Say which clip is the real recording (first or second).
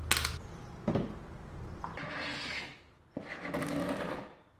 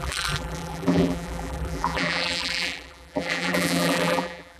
first